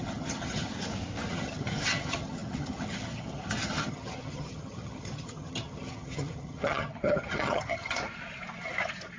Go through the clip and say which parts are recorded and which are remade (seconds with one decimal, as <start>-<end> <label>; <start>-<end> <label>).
0.0-0.7 remade; 0.7-1.3 recorded; 1.3-8.0 remade; 8.0-9.2 recorded